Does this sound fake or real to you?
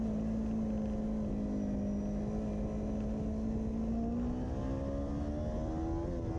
real